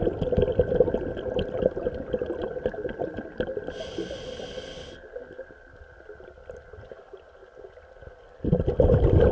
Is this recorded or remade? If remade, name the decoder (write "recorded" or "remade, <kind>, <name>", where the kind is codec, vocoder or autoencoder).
recorded